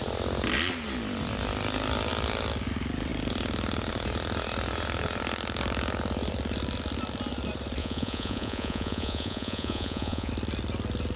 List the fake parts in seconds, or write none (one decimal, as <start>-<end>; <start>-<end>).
7.8-10.3

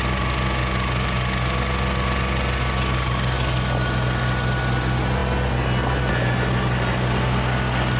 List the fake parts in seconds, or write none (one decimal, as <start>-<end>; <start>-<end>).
none

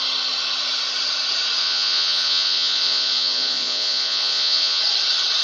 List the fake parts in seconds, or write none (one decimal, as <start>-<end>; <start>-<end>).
1.6-4.8

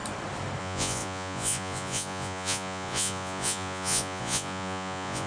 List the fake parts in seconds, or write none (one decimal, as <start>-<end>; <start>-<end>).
0.6-5.3